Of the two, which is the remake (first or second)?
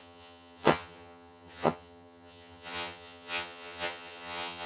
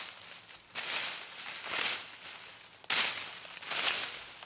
first